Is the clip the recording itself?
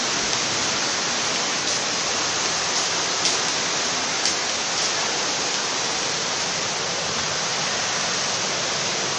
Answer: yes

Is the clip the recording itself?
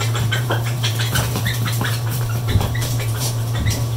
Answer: no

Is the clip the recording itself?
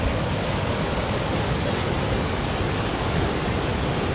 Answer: no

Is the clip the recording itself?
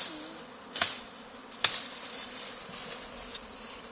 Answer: yes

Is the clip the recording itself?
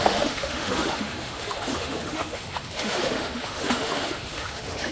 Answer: no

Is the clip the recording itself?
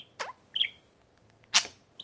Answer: yes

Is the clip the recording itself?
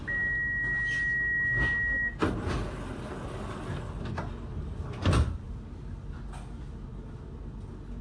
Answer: yes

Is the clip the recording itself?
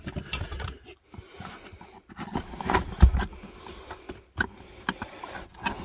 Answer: yes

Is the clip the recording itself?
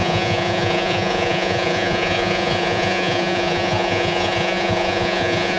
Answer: no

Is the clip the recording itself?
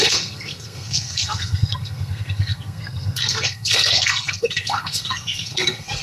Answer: no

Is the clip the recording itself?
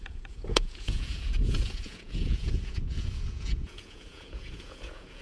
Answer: no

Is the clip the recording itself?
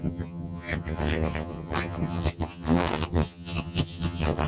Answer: no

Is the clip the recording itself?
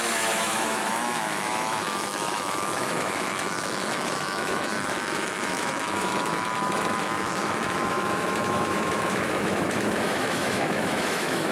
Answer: no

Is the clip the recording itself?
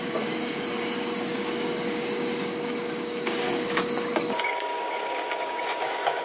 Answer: no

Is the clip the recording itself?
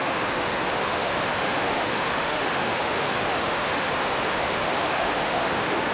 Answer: no